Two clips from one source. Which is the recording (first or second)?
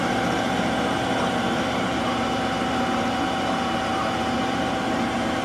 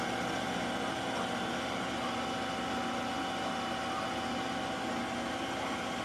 second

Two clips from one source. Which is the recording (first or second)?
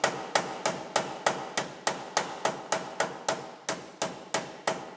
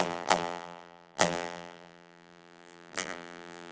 first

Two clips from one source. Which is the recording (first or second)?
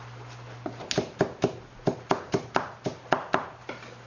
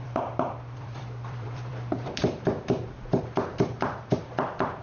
first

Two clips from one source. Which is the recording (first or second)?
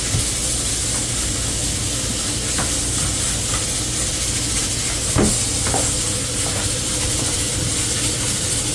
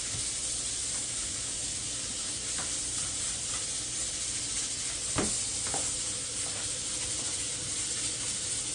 first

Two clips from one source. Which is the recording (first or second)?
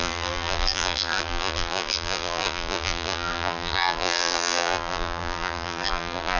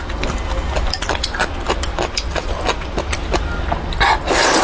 second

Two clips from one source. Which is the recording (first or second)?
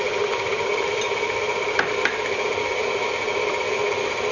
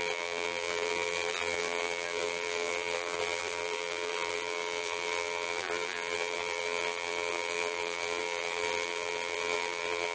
first